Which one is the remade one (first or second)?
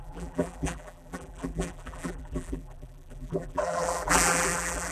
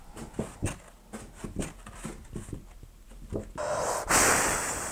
first